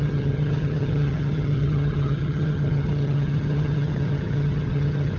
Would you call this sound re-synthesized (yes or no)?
yes